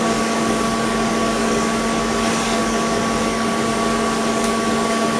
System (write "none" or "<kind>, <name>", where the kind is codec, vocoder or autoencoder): codec, DAC